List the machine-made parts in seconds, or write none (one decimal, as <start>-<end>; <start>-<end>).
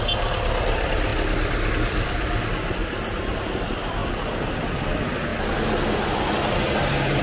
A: 0.0-1.1; 1.7-2.8; 3.6-4.0; 4.5-5.3